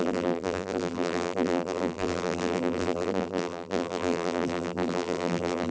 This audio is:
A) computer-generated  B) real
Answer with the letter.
A